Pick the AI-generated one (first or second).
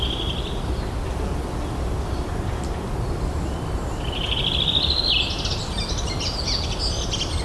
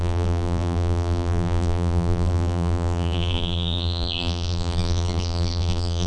second